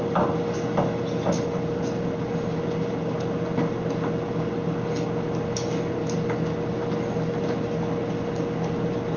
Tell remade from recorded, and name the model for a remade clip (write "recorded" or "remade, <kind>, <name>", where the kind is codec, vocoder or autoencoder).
recorded